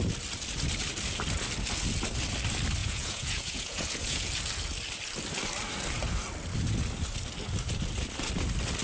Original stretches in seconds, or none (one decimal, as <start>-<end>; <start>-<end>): 0.0-2.8; 4.3-8.8